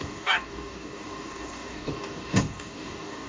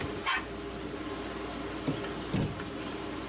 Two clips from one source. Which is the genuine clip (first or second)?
second